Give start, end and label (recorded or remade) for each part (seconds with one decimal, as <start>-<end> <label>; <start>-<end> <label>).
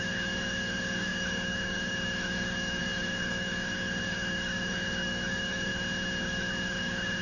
0.0-5.7 remade; 5.7-6.2 recorded; 6.2-7.2 remade